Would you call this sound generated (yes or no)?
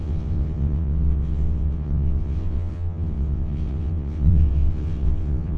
yes